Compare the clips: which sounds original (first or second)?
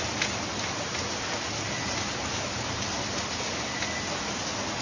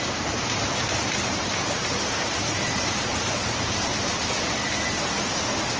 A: first